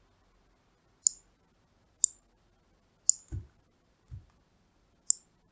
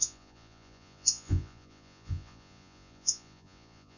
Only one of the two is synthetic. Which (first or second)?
second